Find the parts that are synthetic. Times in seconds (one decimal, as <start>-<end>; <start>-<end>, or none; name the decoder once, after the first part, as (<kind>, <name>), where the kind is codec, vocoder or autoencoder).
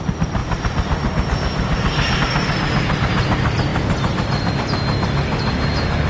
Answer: none